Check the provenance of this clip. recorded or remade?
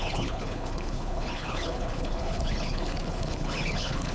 remade